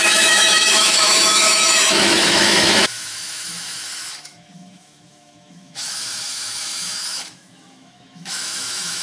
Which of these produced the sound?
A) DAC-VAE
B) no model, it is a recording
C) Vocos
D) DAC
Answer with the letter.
A